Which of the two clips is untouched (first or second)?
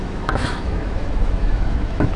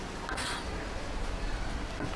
second